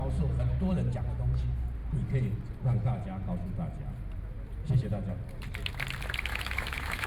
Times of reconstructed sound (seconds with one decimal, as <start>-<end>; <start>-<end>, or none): 6.3-7.1